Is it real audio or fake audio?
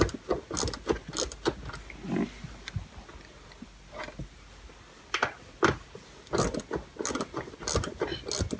real